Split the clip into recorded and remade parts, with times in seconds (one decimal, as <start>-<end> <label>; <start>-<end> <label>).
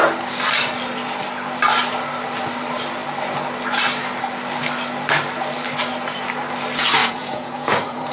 0.0-7.0 recorded; 7.0-8.1 remade